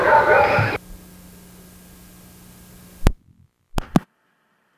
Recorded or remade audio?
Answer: recorded